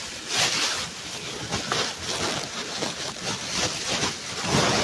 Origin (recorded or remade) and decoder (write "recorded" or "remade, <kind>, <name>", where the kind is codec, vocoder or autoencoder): recorded